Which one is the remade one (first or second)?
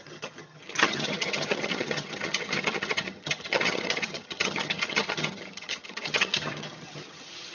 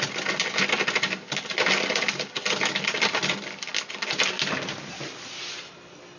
first